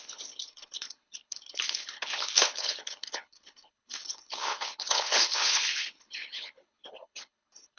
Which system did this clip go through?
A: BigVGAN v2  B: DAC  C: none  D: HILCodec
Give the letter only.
D